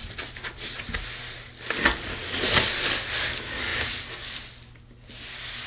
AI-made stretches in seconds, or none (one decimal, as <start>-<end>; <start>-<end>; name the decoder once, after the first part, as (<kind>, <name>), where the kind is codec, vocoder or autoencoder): none